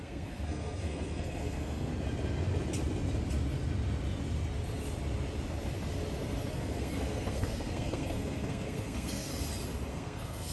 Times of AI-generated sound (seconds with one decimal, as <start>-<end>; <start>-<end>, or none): 0.0-1.9; 6.5-9.3; 9.9-10.5